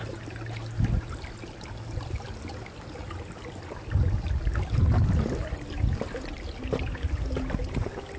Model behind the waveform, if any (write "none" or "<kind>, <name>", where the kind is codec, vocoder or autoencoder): none